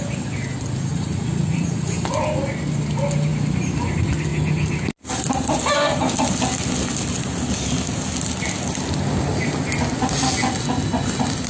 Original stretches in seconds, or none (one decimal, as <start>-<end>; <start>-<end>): 0.0-0.9; 1.9-11.5